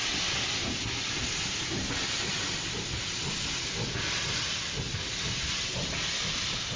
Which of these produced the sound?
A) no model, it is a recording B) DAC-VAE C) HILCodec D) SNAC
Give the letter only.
A